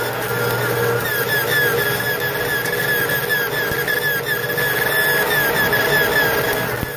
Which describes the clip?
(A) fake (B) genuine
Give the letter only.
B